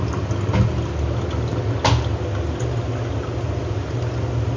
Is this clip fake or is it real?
real